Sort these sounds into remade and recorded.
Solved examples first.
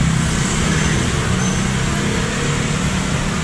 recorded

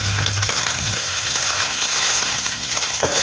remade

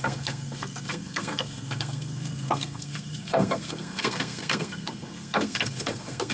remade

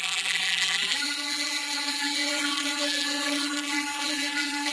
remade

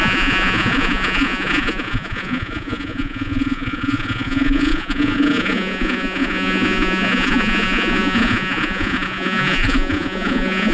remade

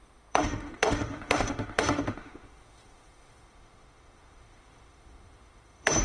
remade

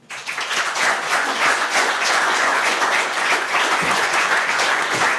remade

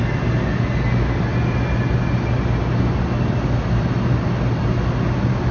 recorded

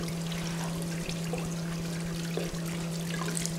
recorded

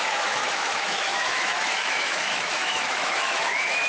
remade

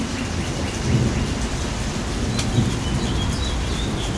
recorded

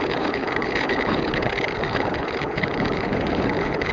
remade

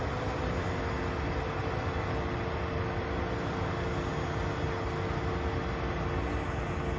recorded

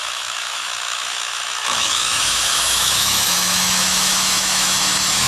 remade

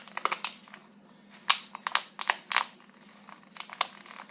recorded